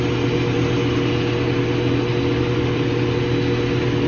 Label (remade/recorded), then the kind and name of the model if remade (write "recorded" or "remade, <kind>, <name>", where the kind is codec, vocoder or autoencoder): recorded